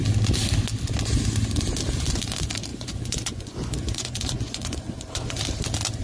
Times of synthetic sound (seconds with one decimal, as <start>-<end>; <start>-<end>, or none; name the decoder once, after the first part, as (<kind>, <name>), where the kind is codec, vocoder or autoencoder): 2.7-5.4 (vocoder, Vocos)